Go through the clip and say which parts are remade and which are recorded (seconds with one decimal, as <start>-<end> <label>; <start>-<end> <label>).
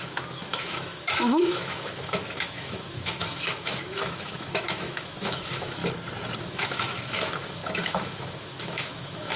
0.0-5.8 remade; 5.8-6.4 recorded; 6.4-9.4 remade